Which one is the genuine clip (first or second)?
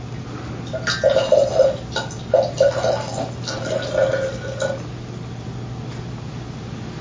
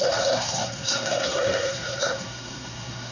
first